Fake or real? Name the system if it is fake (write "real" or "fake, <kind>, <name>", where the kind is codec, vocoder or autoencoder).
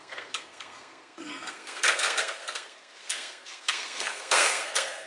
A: fake, codec, SNAC